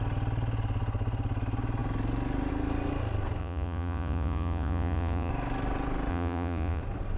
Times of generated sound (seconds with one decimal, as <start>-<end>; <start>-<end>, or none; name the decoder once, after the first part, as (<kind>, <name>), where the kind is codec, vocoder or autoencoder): 3.4-5.3 (vocoder, Vocos); 6.1-6.8